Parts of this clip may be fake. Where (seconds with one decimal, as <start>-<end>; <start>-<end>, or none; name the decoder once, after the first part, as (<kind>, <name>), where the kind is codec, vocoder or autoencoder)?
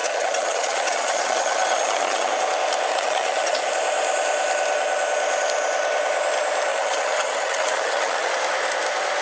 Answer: 0.0-2.3 (vocoder, HiFi-GAN); 2.9-3.7; 6.7-8.3